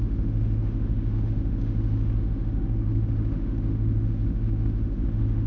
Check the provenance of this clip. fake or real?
fake